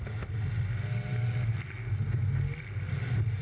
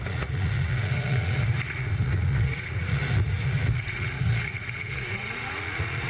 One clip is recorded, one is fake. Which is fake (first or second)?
second